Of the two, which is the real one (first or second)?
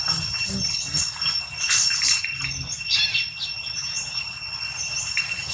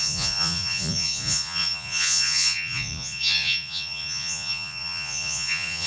first